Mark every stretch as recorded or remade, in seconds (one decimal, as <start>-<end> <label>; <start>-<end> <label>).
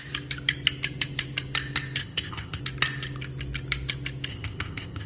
0.0-2.0 recorded; 2.0-2.6 remade; 2.6-4.3 recorded; 4.3-5.1 remade